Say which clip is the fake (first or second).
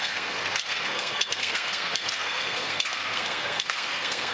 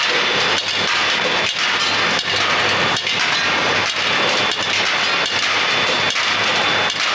first